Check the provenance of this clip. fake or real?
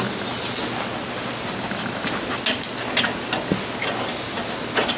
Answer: real